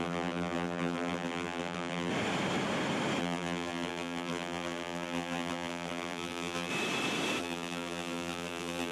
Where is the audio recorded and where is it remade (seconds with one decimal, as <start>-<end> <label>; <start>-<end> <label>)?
0.0-2.1 remade; 2.1-3.2 recorded; 3.2-6.7 remade; 6.7-7.4 recorded; 7.4-8.9 remade